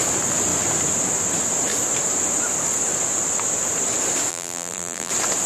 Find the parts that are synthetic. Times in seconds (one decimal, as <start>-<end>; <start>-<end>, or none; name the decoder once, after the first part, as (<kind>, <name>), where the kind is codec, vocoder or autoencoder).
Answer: 4.3-5.1 (vocoder, BigVGAN v2)